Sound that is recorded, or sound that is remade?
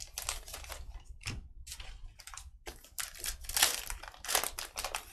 recorded